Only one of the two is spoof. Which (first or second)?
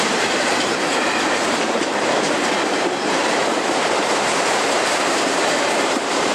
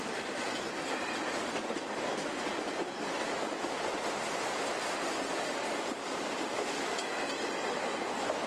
first